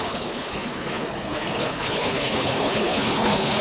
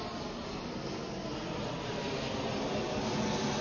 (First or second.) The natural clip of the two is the second